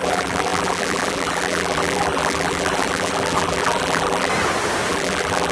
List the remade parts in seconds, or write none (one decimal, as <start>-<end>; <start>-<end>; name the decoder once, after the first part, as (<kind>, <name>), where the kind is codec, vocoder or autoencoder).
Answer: 0.0-4.3 (vocoder, BigVGAN v2); 4.9-5.5